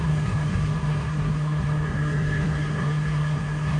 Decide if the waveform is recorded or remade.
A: remade